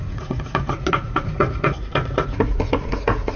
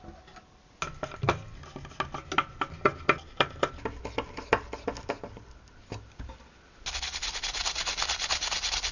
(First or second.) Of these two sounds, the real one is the second